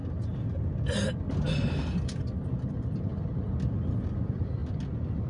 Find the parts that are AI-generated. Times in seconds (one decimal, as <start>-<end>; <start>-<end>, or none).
none